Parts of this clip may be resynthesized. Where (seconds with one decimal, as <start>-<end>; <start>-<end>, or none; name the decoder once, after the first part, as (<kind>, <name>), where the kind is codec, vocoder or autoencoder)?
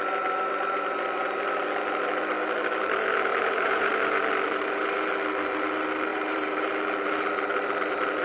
3.3-3.9 (vocoder, BigVGAN v2); 6.1-6.7